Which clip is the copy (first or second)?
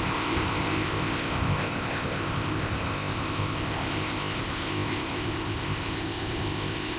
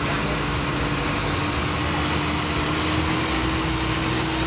first